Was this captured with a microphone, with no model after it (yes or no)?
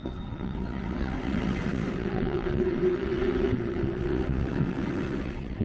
no